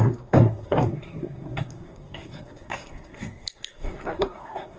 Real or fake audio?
fake